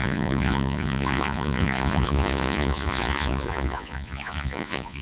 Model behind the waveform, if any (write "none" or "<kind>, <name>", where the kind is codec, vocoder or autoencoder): vocoder, Vocos